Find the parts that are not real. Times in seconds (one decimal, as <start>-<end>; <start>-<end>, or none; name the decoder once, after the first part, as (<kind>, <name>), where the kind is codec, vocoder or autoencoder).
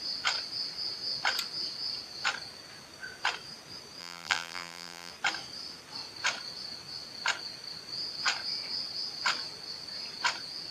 4.0-5.1 (vocoder, BigVGAN v2)